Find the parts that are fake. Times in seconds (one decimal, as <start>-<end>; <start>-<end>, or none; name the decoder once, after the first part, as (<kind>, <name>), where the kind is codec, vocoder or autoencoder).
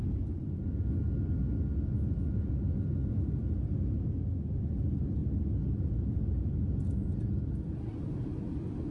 none